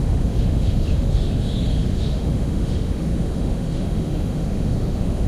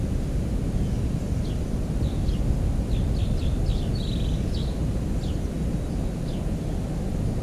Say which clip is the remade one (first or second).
first